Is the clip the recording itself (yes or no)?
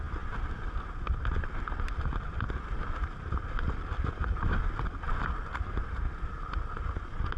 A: yes